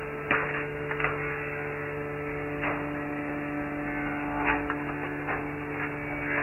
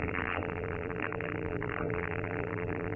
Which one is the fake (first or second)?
second